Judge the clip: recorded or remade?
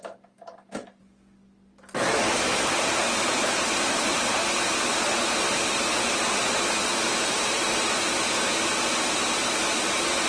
recorded